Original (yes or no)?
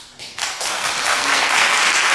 no